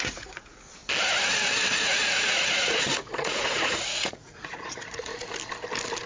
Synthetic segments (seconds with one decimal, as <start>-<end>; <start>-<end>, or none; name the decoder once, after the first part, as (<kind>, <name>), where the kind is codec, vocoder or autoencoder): 0.0-0.8 (vocoder, Vocos); 1.7-5.1